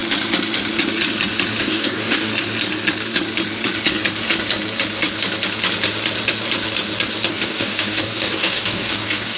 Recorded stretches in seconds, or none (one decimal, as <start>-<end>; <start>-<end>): 0.0-1.6; 2.3-7.3